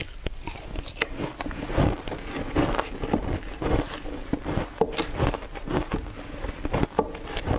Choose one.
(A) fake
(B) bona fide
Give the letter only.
B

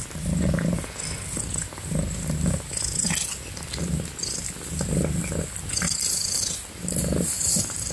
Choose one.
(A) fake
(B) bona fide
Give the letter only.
B